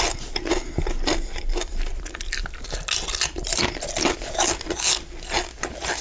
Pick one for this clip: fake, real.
real